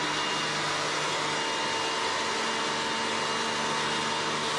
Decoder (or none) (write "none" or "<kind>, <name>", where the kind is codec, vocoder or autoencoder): none